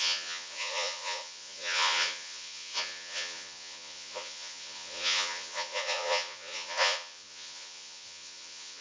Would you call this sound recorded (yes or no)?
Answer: no